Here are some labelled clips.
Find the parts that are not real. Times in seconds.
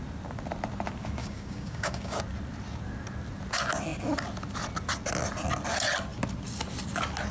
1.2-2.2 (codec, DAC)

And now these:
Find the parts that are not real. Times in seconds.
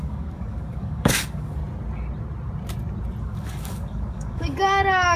0.0-1.6 (codec, DAC); 3.2-5.2